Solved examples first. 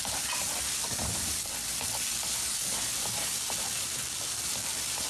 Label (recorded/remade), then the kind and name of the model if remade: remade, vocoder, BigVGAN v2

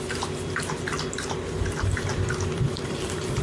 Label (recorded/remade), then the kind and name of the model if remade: recorded